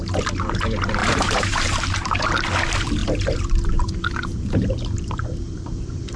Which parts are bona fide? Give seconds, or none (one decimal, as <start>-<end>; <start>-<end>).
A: 0.0-1.0; 2.3-3.0